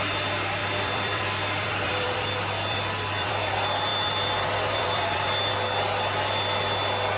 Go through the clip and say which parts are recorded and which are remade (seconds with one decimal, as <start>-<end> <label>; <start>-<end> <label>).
0.0-0.6 recorded; 0.6-3.5 remade; 3.5-3.9 recorded; 3.9-5.5 remade; 5.5-7.2 recorded